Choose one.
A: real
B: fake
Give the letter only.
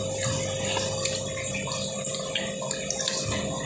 A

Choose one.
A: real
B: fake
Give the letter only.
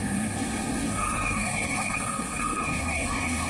B